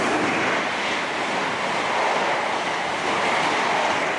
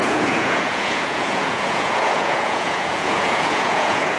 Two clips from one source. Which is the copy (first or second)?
second